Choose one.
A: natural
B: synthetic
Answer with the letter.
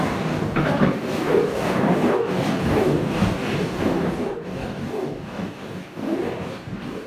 B